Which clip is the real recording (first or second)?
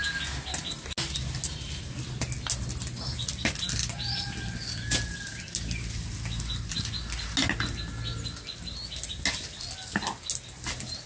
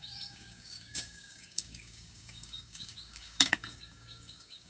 first